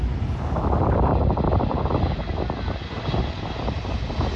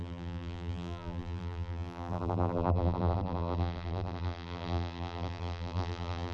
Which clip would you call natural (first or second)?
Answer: first